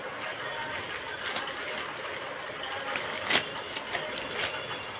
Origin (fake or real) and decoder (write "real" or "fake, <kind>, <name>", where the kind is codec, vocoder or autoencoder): real